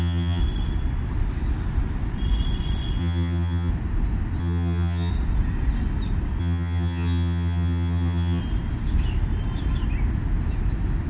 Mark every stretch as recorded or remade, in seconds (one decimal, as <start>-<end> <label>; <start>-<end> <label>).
0.0-0.4 remade; 0.4-3.0 recorded; 3.0-3.7 remade; 3.7-4.4 recorded; 4.4-5.1 remade; 5.1-6.4 recorded; 6.4-8.4 remade; 8.4-11.1 recorded